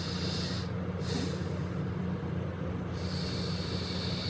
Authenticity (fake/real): real